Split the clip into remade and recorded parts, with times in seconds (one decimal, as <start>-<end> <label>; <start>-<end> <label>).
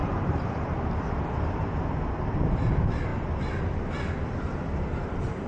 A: 0.0-0.7 remade; 0.7-5.5 recorded